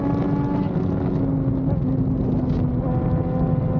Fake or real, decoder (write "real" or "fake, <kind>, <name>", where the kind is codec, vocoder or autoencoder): real